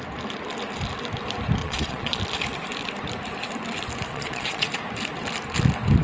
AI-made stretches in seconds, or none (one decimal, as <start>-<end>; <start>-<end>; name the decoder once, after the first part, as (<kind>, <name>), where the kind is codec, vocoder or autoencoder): 1.6-2.2 (vocoder, Vocos); 4.1-4.7